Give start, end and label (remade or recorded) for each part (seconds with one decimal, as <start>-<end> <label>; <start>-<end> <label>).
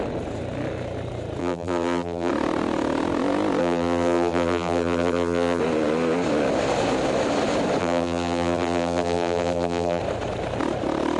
0.0-1.4 recorded; 1.4-2.3 remade; 2.3-3.6 recorded; 3.6-5.6 remade; 5.6-7.8 recorded; 7.8-10.0 remade; 10.0-11.2 recorded